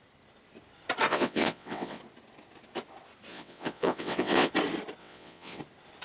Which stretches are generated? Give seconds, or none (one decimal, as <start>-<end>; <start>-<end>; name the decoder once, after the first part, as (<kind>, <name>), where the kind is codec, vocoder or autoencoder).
1.1-2.0 (vocoder, WaveNeXt); 3.3-4.5; 5.0-5.6